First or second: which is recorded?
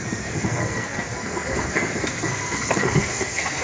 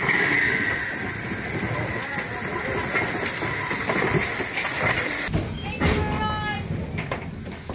second